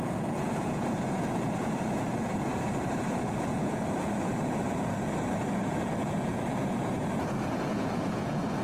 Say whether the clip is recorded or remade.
remade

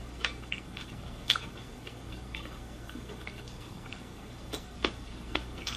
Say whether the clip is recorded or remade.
remade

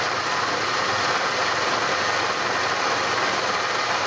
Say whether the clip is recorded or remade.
recorded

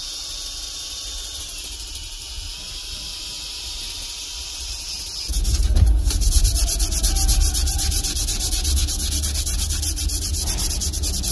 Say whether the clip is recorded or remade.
recorded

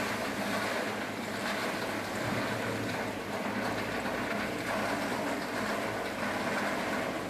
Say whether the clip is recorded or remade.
recorded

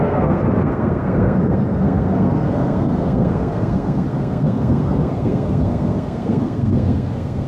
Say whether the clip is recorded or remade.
remade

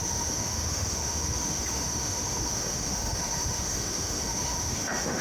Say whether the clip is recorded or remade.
remade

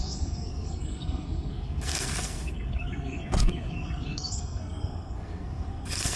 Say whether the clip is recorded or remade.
remade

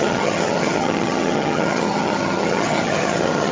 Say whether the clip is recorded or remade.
remade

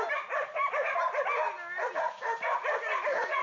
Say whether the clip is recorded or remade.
recorded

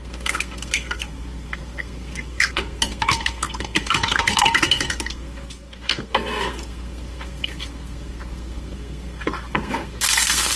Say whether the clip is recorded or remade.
remade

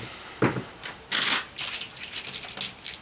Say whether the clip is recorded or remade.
recorded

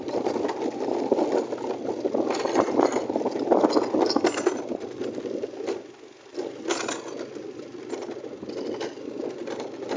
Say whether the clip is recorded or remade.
recorded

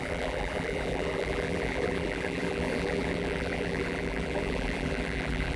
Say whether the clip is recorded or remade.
remade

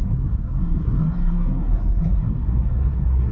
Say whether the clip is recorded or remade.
remade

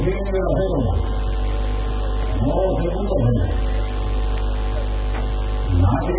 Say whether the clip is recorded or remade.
recorded